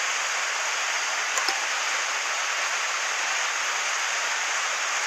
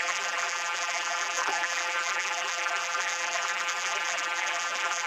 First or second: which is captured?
first